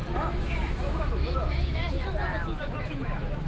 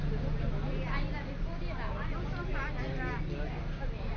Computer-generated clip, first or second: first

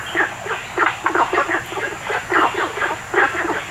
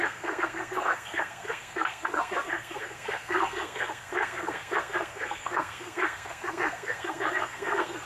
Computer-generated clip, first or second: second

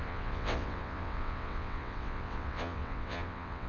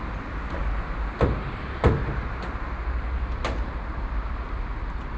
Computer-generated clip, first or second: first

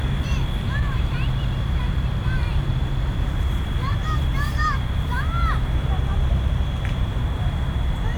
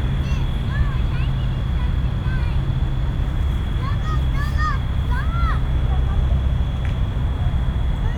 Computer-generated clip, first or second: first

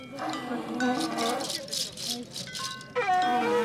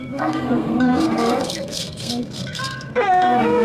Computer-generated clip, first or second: second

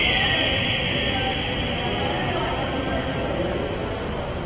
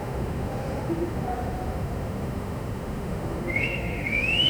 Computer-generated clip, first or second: second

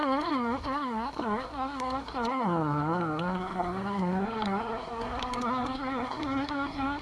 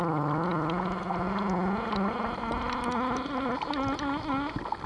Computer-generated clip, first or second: first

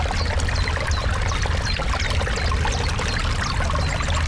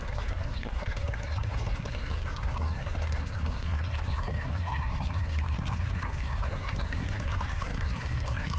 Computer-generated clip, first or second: second